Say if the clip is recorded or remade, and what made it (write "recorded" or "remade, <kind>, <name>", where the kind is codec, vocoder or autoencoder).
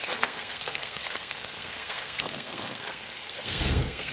remade, codec, SNAC